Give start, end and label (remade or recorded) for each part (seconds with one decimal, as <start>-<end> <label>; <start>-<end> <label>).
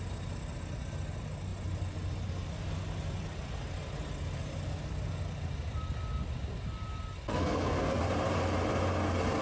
0.0-7.3 recorded; 7.3-8.0 remade; 8.0-9.4 recorded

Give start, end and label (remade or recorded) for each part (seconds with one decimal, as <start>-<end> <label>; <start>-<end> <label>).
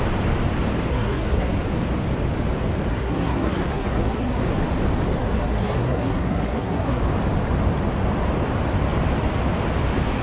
0.0-0.9 recorded; 0.9-1.5 remade; 1.5-2.9 recorded; 2.9-4.4 remade; 4.4-5.2 recorded; 5.2-7.0 remade; 7.0-10.2 recorded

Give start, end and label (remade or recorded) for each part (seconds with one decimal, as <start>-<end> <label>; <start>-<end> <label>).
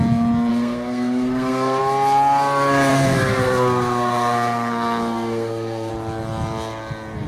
0.0-0.5 recorded; 0.5-1.8 remade; 1.8-2.9 recorded; 2.9-5.9 remade; 5.9-7.3 recorded